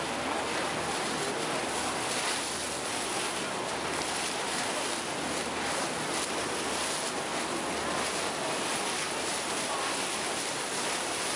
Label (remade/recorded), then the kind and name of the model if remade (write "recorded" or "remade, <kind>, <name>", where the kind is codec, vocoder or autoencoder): recorded